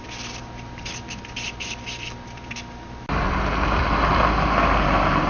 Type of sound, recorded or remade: recorded